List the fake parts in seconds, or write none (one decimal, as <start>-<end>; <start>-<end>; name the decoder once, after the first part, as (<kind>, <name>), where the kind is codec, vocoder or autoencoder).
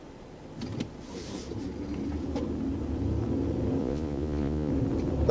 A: 3.8-4.7 (vocoder, Vocos)